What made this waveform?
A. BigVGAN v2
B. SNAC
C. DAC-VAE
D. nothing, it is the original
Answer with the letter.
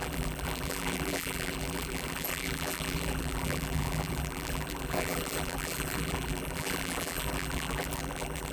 A